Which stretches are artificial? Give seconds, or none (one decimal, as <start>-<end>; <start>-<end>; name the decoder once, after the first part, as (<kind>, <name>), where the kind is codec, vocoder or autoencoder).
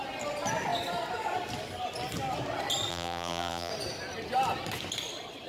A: 2.9-3.7 (vocoder, BigVGAN v2)